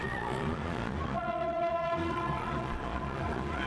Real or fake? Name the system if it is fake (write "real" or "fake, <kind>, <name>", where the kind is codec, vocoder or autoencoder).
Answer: fake, vocoder, Vocos